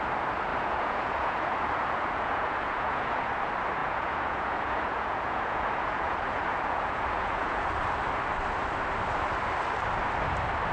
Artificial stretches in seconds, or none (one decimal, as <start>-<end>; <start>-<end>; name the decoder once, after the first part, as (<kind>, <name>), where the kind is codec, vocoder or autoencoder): 0.5-3.3 (vocoder, Vocos); 3.8-7.7